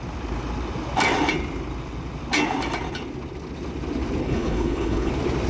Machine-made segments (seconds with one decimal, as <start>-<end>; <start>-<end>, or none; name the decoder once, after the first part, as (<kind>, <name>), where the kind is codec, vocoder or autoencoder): 4.2-5.1 (codec, HILCodec)